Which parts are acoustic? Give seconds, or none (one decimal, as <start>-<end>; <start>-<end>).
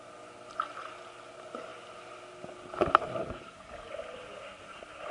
0.0-3.2; 3.9-5.1